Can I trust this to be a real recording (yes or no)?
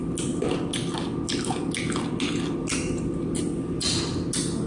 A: yes